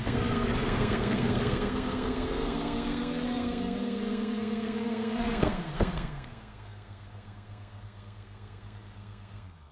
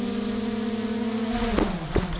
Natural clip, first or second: second